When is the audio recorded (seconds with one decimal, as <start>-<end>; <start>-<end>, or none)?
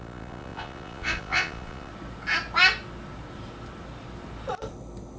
1.9-5.2